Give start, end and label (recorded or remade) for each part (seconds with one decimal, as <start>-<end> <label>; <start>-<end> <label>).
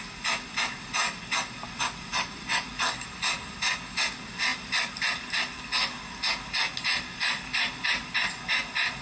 0.0-1.0 recorded; 1.0-3.1 remade; 3.1-4.5 recorded; 4.5-5.6 remade; 5.6-9.0 recorded